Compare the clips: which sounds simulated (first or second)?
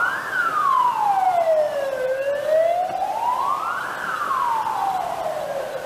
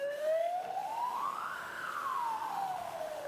second